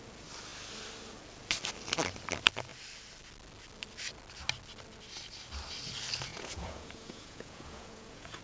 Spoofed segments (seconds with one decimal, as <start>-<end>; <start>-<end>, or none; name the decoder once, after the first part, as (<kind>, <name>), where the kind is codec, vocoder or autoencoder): 6.3-8.4 (vocoder, Vocos)

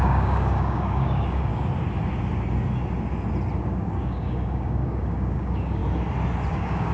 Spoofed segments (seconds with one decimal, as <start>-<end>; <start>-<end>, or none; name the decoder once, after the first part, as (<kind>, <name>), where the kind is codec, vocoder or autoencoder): 0.0-1.5 (codec, DAC); 3.7-5.8; 6.5-6.9

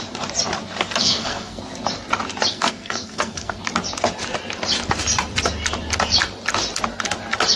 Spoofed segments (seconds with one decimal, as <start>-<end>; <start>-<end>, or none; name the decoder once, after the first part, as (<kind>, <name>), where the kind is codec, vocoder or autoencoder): 1.0-1.6 (codec, SNAC); 2.5-3.6

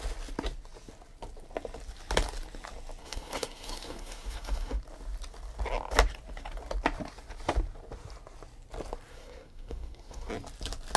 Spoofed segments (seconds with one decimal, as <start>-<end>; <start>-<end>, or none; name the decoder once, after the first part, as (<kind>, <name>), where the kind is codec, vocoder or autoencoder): 3.0-4.8 (codec, SNAC); 9.1-10.3

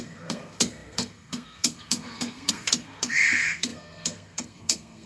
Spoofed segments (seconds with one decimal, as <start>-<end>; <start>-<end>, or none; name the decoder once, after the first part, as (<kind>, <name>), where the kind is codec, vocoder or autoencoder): 0.0-5.1 (codec, SNAC)

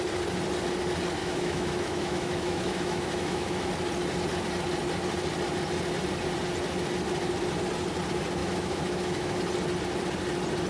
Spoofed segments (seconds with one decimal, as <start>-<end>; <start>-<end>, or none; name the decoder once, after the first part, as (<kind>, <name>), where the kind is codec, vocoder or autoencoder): 1.2-3.7 (autoencoder, DAC-VAE); 8.4-9.4

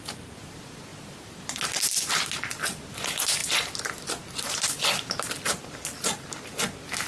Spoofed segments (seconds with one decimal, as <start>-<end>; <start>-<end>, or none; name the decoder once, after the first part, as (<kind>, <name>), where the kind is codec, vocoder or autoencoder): none